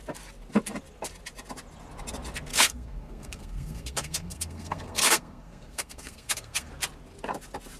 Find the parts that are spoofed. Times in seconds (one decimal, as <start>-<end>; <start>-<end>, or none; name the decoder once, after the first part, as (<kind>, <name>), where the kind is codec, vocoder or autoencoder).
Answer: 2.5-6.7 (codec, SNAC)